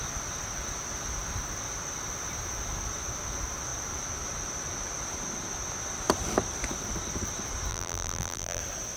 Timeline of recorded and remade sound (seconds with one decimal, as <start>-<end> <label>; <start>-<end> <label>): 0.0-7.7 recorded; 7.7-8.6 remade; 8.6-9.0 recorded